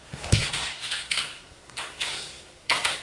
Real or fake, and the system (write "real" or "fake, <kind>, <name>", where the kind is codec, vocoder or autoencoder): fake, codec, SNAC